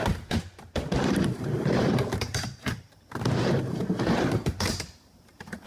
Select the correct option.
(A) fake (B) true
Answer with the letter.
A